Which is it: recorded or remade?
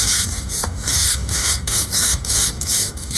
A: remade